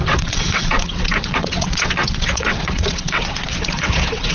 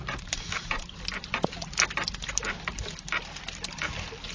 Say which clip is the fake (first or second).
first